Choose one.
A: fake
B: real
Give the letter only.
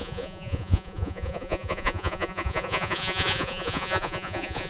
A